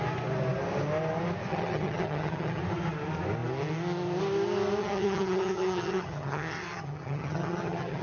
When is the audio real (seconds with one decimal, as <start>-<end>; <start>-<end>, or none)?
0.0-1.5; 2.6-4.8

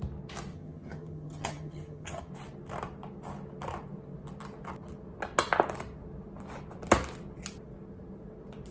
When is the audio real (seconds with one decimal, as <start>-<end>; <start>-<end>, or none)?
0.0-0.5; 2.3-8.7

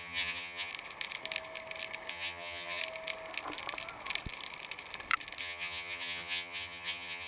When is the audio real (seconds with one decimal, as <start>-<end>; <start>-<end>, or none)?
0.7-2.1; 2.8-5.4

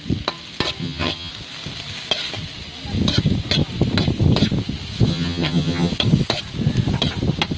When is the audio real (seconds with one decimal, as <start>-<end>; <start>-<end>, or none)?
0.0-0.8; 1.3-5.1; 5.9-7.6

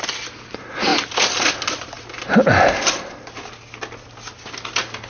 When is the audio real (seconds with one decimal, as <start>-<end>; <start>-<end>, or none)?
0.0-5.1

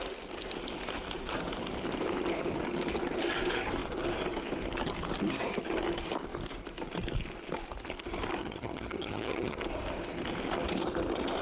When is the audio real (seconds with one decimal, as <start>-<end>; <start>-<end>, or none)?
0.0-8.4; 9.6-11.4